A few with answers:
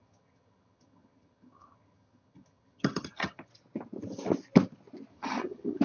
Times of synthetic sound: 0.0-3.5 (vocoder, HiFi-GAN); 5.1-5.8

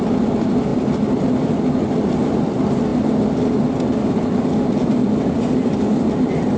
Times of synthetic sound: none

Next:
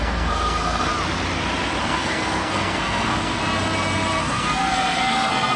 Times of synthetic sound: 0.0-0.9 (codec, SNAC); 1.8-3.4; 4.2-5.6